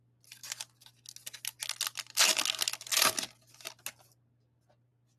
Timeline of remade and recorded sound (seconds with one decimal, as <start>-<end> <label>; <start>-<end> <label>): 0.0-5.2 recorded